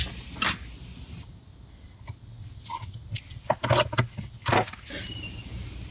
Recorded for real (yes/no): yes